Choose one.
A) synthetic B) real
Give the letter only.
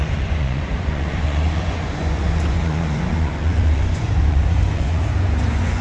A